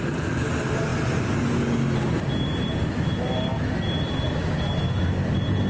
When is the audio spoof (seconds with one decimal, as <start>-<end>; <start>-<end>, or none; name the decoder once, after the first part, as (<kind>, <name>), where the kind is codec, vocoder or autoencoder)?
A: none

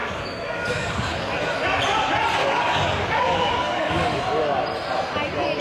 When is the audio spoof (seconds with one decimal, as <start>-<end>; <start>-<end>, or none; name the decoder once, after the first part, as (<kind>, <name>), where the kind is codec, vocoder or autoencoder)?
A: 0.0-1.3 (codec, DAC); 2.4-4.2

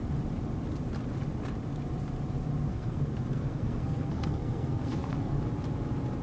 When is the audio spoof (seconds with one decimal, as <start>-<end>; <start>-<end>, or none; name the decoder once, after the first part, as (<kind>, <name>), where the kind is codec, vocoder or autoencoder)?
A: 2.7-5.4 (codec, SNAC)

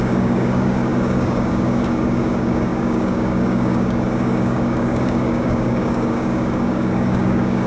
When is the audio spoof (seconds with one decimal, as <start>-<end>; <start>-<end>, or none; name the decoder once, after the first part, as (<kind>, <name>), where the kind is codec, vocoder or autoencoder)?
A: 0.0-7.7 (codec, DAC)